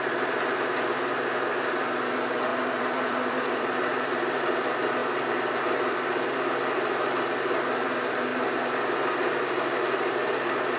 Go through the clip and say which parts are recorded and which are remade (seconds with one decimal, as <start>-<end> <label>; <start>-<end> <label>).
0.0-2.5 recorded; 2.5-3.8 remade; 3.8-5.0 recorded; 5.0-6.1 remade; 6.1-10.8 recorded

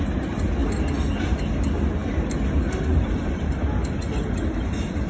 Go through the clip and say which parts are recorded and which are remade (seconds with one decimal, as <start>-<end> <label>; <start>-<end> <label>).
0.0-5.1 recorded

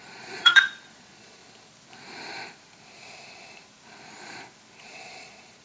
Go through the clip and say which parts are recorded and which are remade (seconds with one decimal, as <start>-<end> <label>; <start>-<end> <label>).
0.0-1.4 remade; 1.4-4.8 recorded; 4.8-5.6 remade

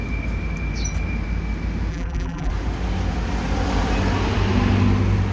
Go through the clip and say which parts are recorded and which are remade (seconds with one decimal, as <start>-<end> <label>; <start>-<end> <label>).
0.0-1.9 recorded; 1.9-2.5 remade; 2.5-5.3 recorded

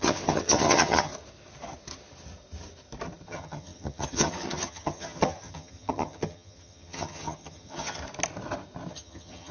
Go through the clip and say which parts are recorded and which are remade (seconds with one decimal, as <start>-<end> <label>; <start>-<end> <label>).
0.0-1.1 remade; 1.1-3.3 recorded; 3.3-8.0 remade; 8.0-8.9 recorded; 8.9-9.5 remade

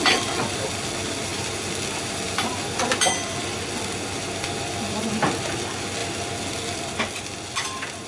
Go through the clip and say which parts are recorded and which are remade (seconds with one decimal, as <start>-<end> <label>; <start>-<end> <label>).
0.0-8.1 recorded

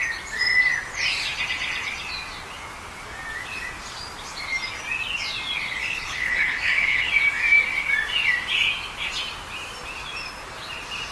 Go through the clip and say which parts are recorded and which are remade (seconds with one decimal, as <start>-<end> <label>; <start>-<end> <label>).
0.0-5.8 recorded; 5.8-7.1 remade; 7.1-11.1 recorded